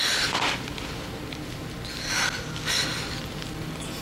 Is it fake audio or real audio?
real